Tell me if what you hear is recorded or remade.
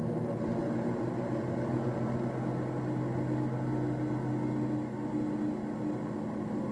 recorded